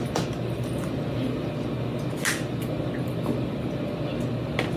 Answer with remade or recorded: recorded